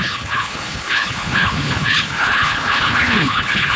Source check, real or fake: fake